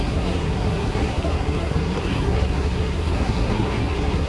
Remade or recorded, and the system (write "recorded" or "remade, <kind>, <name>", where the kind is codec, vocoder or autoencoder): remade, codec, SNAC